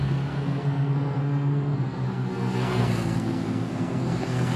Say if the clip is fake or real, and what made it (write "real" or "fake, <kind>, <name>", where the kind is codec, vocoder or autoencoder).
fake, codec, SNAC